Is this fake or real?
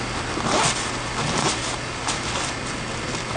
real